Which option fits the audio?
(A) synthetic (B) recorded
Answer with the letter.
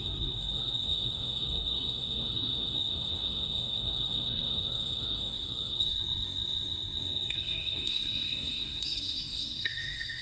A